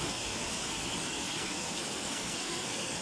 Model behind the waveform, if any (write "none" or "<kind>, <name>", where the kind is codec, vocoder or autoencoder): codec, SNAC